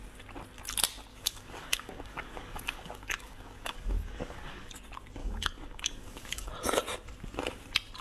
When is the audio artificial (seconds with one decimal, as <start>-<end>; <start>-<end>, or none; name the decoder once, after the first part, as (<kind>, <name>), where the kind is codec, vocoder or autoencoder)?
1.1-4.7 (codec, DAC); 5.2-6.5